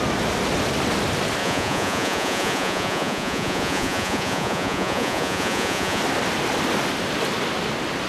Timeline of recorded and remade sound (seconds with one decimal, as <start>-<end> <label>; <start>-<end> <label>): 0.0-1.4 recorded; 1.4-6.0 remade; 6.0-8.1 recorded